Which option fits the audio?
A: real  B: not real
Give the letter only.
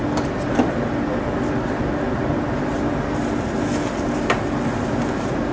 A